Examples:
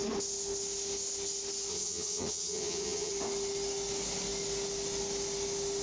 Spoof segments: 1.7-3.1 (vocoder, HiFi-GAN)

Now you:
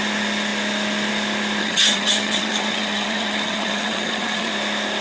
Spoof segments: 1.6-4.5 (vocoder, HiFi-GAN)

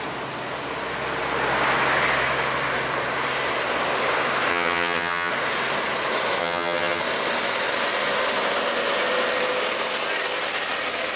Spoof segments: 4.5-5.3 (vocoder, HiFi-GAN); 6.4-7.0

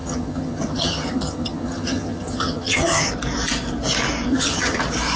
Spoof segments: 0.0-3.1 (vocoder, HiFi-GAN); 4.3-4.8

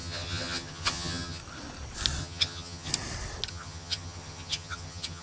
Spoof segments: 0.0-1.4 (vocoder, HiFi-GAN); 2.2-2.9; 3.5-5.2